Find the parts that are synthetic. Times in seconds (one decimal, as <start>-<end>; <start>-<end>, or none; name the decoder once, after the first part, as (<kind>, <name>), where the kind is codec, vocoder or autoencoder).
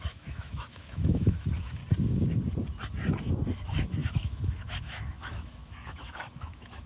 0.0-1.8 (autoencoder, DAC-VAE); 3.6-6.9